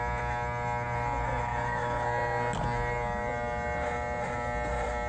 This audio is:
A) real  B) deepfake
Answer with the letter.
A